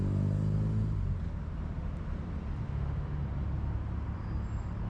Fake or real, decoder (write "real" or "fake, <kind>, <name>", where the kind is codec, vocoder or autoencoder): real